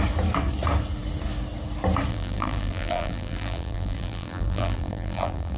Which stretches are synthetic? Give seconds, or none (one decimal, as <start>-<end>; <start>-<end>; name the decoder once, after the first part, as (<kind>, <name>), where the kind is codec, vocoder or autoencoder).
2.1-5.6 (vocoder, BigVGAN v2)